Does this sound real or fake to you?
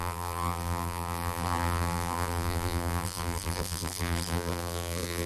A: fake